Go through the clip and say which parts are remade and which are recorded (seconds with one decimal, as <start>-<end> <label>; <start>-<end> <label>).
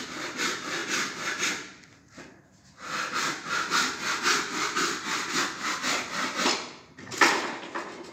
0.0-8.1 recorded